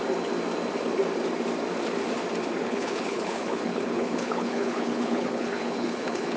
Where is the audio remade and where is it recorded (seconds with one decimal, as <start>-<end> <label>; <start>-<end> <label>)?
0.0-2.6 recorded; 2.6-6.4 remade